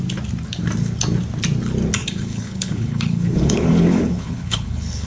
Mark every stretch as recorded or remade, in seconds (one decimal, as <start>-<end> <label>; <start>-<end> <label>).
0.0-2.0 recorded; 2.0-5.1 remade